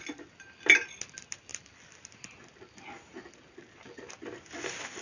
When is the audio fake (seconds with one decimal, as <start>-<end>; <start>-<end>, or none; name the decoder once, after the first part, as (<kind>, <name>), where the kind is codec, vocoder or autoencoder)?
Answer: none